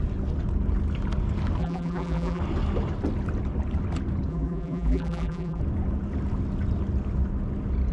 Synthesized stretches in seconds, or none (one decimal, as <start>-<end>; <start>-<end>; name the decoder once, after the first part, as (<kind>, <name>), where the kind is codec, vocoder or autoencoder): 1.6-2.4 (vocoder, BigVGAN v2); 4.3-5.6